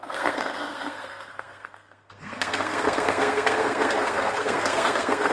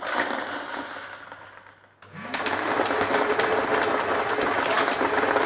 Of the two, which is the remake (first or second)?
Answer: first